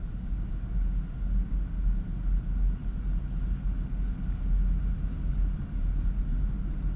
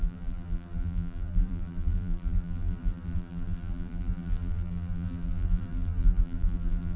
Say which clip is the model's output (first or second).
second